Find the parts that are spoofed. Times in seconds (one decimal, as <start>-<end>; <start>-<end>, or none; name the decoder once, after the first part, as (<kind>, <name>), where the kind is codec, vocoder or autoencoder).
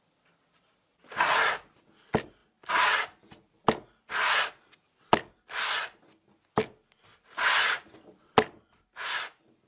none